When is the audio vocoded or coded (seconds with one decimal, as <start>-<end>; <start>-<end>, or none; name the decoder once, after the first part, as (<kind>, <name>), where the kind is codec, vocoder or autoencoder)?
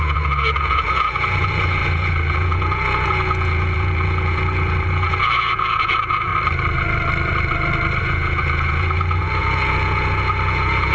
0.0-6.3 (vocoder, Vocos); 8.0-10.9